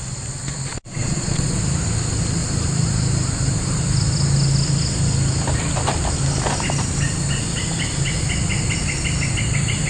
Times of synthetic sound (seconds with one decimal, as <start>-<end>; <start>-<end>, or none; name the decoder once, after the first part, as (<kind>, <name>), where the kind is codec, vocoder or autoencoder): 0.7-1.6 (vocoder, Vocos)